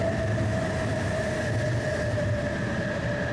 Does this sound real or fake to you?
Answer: real